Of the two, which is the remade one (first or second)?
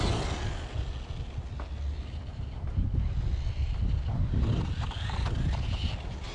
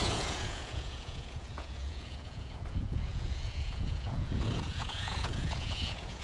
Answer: second